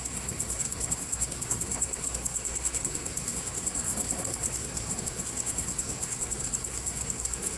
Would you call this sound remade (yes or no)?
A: yes